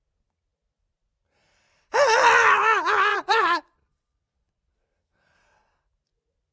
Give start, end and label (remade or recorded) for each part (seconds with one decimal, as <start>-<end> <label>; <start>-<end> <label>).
0.0-3.1 recorded; 3.1-4.8 remade; 4.8-6.5 recorded